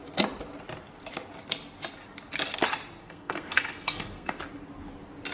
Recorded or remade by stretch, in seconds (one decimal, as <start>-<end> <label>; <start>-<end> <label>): 0.0-3.0 recorded; 3.0-4.4 remade; 4.4-5.3 recorded